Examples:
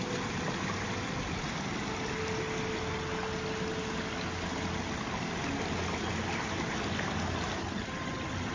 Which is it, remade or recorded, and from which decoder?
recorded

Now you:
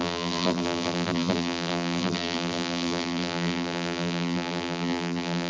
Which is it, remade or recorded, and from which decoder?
remade, vocoder, BigVGAN v2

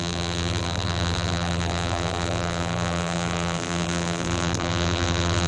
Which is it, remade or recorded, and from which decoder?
remade, vocoder, BigVGAN v2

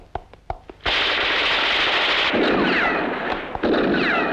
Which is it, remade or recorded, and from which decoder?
recorded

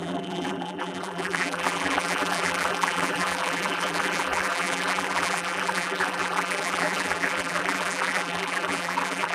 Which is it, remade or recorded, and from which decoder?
remade, vocoder, BigVGAN v2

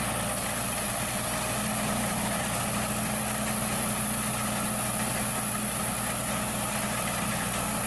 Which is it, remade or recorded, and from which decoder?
recorded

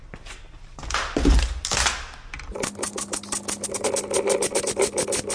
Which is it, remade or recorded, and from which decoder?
recorded